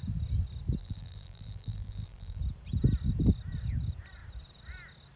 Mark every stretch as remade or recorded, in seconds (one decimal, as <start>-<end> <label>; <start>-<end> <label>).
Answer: 0.0-0.8 recorded; 0.8-2.4 remade; 2.4-5.2 recorded